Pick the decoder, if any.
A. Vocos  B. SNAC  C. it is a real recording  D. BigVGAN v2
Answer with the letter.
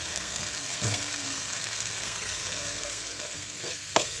B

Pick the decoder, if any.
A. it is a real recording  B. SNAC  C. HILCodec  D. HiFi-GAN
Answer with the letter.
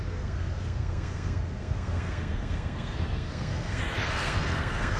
B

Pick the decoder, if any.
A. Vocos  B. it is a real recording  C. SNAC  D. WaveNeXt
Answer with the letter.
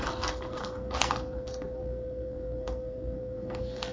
C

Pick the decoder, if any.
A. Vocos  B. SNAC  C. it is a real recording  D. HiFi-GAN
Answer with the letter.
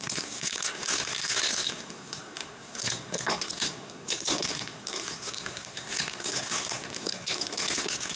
B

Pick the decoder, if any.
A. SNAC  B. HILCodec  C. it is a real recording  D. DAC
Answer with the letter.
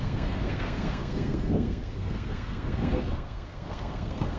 A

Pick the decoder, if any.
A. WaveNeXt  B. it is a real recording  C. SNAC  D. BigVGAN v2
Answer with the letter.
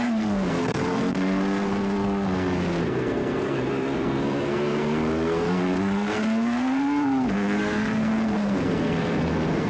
C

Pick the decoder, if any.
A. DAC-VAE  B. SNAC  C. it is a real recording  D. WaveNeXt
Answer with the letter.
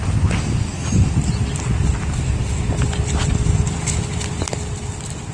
C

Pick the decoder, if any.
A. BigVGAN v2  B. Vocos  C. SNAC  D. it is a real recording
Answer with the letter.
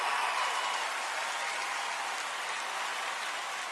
D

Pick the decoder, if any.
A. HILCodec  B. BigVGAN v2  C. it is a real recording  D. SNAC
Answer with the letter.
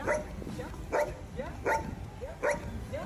C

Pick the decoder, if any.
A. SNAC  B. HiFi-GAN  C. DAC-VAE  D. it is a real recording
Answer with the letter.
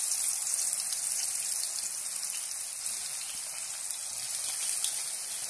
D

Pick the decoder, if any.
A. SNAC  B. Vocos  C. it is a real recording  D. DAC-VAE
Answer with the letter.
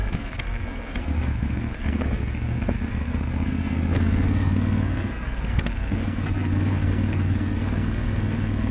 A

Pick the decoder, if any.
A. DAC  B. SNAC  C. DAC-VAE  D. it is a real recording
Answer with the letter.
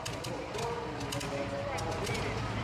D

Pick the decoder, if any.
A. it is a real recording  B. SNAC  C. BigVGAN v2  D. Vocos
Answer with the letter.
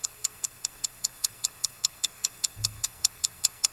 B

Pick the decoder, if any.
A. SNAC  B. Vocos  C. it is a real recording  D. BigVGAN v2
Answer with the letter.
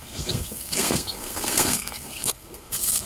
A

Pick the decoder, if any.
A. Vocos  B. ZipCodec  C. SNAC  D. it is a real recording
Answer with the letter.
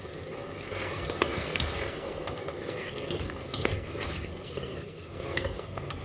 C